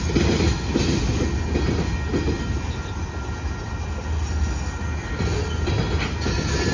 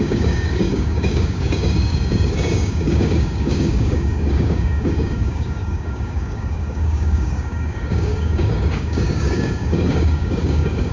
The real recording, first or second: first